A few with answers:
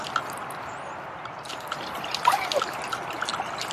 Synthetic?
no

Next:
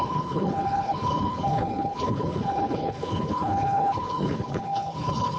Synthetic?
yes